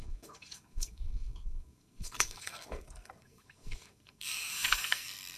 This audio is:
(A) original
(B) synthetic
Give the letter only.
B